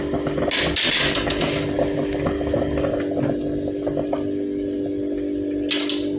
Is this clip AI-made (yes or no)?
no